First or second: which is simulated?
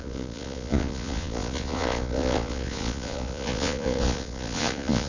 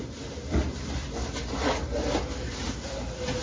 first